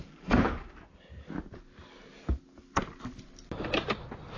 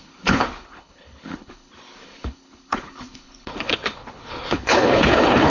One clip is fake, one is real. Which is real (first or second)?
first